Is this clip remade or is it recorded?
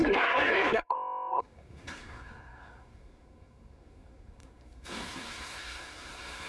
remade